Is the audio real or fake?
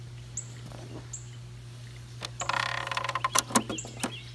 real